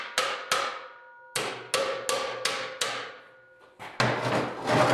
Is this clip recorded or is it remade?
recorded